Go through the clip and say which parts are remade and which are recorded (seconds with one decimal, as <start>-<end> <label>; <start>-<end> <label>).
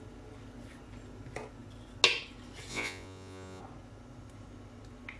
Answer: 0.0-2.7 recorded; 2.7-3.6 remade; 3.6-5.2 recorded